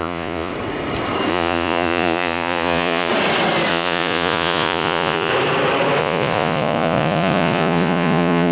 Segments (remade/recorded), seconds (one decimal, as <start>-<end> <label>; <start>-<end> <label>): 0.0-0.5 remade; 0.5-1.3 recorded; 1.3-3.1 remade; 3.1-3.7 recorded; 3.7-5.3 remade; 5.3-6.0 recorded; 6.0-8.5 remade